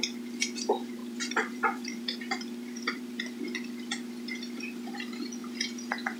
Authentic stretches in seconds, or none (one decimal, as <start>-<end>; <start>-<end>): 0.0-1.0; 3.4-5.4